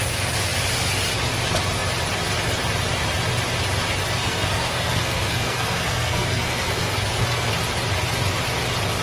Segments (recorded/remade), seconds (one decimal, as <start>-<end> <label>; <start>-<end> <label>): 0.0-4.2 recorded; 4.2-7.5 remade; 7.5-9.0 recorded